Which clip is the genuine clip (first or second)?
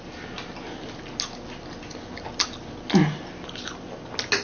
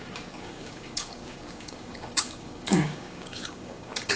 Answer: first